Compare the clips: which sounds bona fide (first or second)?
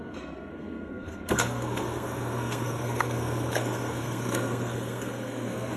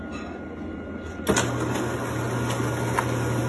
second